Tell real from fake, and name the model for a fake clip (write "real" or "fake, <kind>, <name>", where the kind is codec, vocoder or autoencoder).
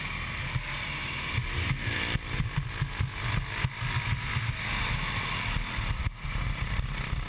real